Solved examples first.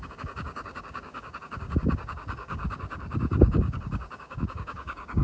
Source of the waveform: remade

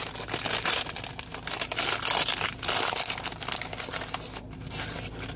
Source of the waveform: recorded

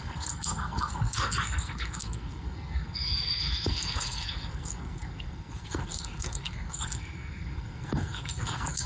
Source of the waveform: remade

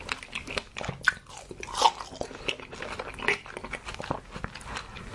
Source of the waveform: recorded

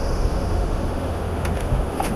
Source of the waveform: remade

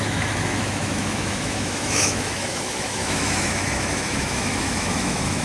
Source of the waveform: remade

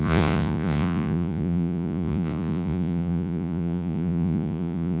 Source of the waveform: remade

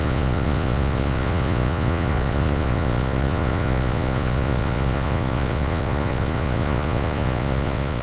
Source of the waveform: remade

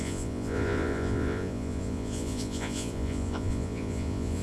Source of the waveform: remade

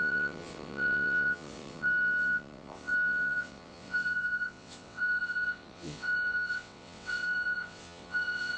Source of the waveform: remade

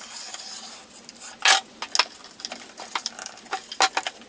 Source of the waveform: recorded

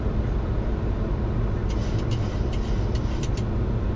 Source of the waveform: recorded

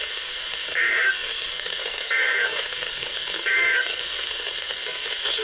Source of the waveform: remade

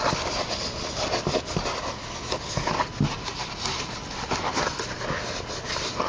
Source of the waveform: recorded